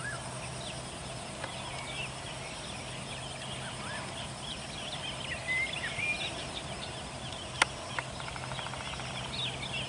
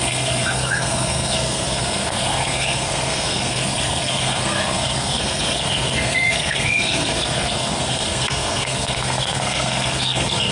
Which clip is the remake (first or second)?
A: second